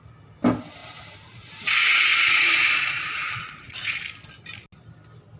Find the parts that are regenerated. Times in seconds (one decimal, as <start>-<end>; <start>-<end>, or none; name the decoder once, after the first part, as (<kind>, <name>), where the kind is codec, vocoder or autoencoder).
2.1-4.0 (vocoder, Vocos)